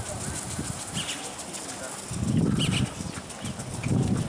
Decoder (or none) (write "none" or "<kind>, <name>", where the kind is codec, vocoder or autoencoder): none